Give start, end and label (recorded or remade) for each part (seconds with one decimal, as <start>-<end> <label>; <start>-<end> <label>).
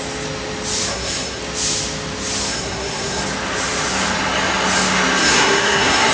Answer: 0.0-0.9 recorded; 0.9-1.4 remade; 1.4-2.5 recorded; 2.5-3.2 remade; 3.2-5.2 recorded; 5.2-6.1 remade